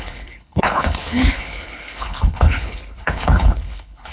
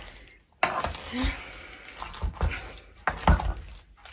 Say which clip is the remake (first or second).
first